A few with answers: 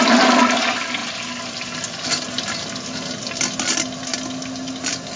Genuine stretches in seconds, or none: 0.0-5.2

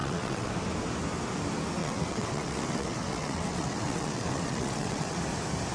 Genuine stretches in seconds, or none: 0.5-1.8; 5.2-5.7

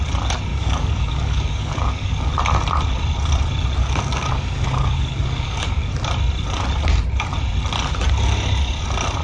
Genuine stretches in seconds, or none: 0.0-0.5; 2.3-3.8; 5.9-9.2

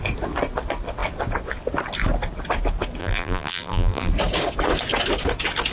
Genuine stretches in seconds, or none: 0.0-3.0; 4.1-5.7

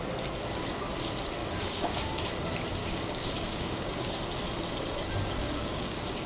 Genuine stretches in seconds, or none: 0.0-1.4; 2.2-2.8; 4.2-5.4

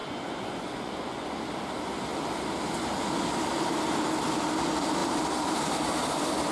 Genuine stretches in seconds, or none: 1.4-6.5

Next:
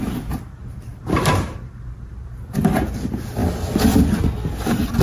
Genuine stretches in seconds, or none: 0.0-0.9; 2.8-5.0

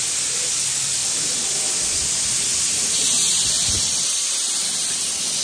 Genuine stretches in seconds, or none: 0.0-1.0; 4.2-5.4